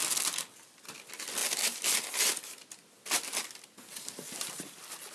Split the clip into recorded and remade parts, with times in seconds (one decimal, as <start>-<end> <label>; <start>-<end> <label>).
0.0-5.1 recorded